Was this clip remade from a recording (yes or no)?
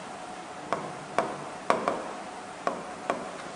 no